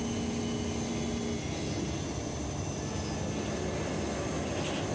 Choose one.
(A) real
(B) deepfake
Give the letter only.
A